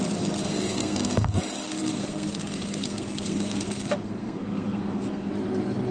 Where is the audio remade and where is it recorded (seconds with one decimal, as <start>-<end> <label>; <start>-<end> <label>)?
0.0-0.4 recorded; 0.4-1.4 remade; 1.4-1.8 recorded; 1.8-5.3 remade; 5.3-5.9 recorded